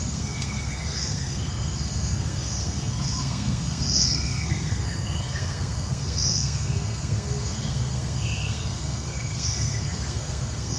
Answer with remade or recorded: remade